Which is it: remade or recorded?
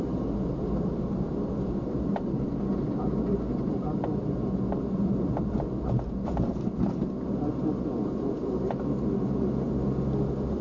recorded